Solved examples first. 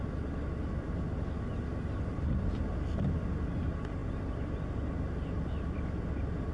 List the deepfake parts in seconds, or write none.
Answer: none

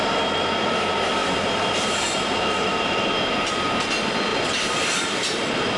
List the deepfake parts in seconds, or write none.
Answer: 1.2-3.5 (vocoder, BigVGAN v2); 4.3-5.8

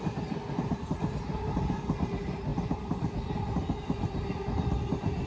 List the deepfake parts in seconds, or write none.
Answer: none

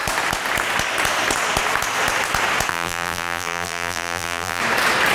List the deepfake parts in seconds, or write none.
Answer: 2.7-4.6 (vocoder, BigVGAN v2)

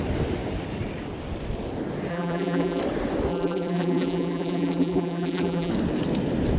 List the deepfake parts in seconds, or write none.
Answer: 2.1-2.8 (vocoder, BigVGAN v2); 3.3-5.7